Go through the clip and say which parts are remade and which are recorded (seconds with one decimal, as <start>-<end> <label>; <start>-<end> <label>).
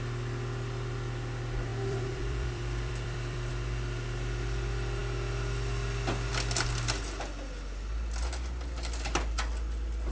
0.0-1.7 recorded; 1.7-3.5 remade; 3.5-10.1 recorded